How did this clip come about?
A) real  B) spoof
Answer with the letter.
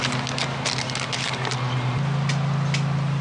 A